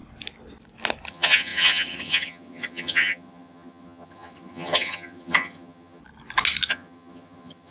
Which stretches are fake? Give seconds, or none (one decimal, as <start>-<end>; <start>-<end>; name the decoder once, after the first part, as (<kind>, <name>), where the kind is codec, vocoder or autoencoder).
1.1-6.0 (vocoder, HiFi-GAN); 6.7-7.7